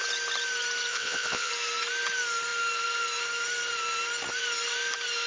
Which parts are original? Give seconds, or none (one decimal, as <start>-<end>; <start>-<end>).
0.0-0.9; 1.5-5.3

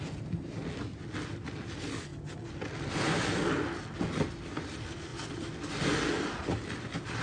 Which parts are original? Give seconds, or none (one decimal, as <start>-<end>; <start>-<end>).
0.0-7.2

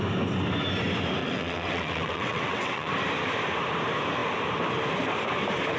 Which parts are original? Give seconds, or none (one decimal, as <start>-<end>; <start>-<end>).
0.0-1.2; 2.9-5.8

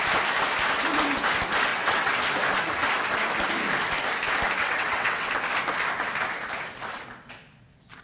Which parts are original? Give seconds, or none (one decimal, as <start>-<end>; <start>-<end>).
0.0-1.7; 2.2-4.6; 5.3-8.0

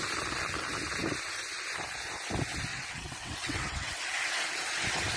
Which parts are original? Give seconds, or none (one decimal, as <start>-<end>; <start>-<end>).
0.0-2.7; 4.0-5.2